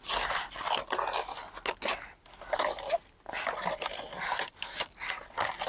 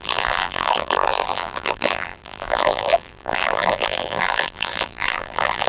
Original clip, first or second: first